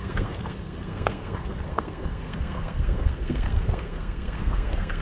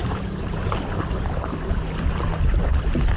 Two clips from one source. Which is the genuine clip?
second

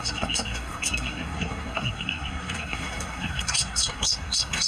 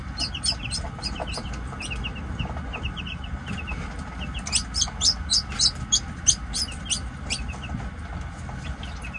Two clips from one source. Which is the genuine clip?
second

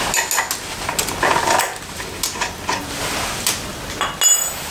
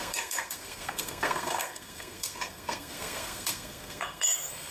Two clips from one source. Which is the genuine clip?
first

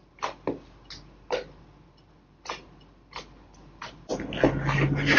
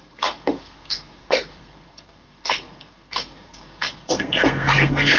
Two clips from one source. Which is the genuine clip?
first